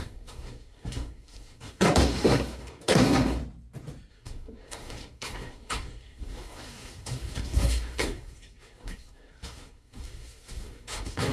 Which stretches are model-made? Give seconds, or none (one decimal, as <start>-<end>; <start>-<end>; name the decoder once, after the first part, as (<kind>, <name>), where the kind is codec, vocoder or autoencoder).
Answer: 0.0-3.4 (codec, SNAC); 4.1-11.3